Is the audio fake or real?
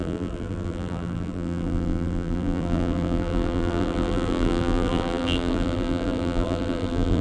fake